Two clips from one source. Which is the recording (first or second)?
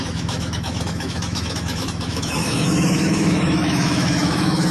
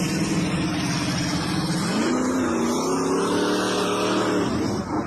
second